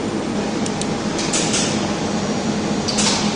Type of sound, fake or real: real